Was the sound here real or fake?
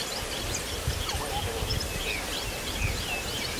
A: real